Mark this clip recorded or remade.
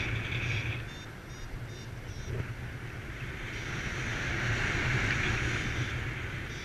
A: recorded